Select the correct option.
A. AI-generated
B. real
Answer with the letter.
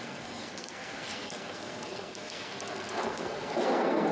A